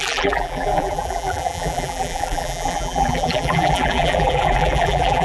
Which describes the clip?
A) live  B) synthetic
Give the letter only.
B